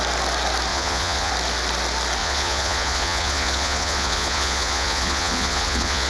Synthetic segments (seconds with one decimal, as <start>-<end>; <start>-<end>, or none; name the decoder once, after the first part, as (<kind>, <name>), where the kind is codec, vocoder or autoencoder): 0.7-1.3 (vocoder, Vocos); 2.2-6.1